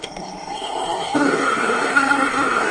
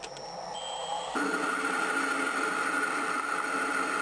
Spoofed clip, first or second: first